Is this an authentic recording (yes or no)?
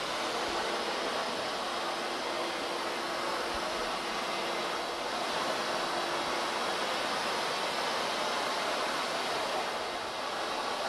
yes